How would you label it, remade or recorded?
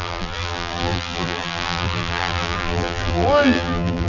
remade